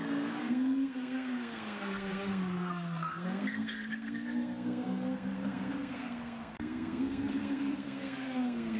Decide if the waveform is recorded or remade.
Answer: remade